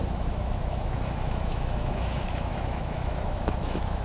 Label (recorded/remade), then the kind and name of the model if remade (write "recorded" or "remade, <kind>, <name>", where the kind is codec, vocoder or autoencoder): remade, autoencoder, DAC-VAE